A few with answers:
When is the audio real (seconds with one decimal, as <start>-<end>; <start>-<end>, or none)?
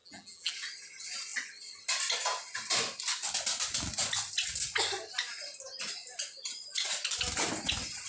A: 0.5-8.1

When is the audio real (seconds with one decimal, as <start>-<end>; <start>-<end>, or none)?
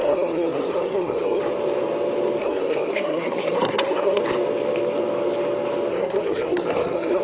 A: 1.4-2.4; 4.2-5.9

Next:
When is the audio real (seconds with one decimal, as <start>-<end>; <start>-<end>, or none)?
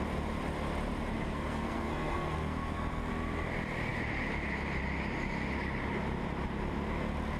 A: 0.0-1.1; 3.1-7.4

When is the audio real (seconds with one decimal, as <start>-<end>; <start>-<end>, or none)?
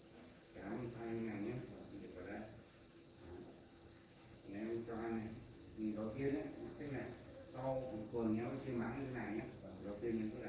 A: none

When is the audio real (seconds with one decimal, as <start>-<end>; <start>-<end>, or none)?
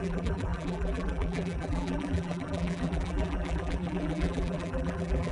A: none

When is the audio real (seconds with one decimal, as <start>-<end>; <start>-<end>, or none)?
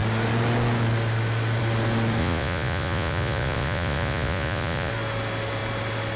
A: 0.0-2.2; 4.9-6.2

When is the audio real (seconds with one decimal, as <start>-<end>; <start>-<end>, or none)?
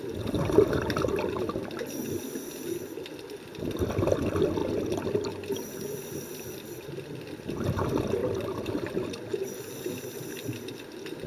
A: 0.0-6.3; 6.8-8.2; 10.7-11.3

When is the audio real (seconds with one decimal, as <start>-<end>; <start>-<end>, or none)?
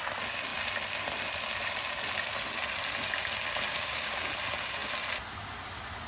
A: 0.0-3.7; 4.3-6.1